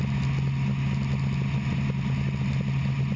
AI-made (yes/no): no